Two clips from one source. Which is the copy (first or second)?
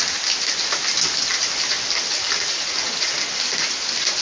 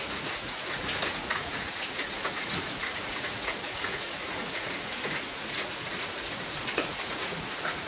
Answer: second